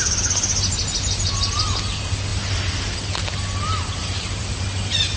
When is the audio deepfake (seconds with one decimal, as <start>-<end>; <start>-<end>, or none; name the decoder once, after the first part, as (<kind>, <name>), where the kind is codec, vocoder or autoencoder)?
none